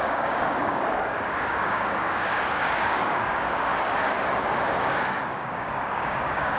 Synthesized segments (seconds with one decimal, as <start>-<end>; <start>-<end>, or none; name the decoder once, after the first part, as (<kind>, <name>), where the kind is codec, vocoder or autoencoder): 0.0-3.7 (codec, DAC); 4.8-6.6